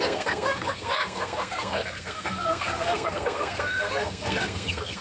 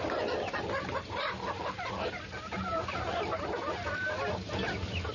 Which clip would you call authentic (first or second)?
second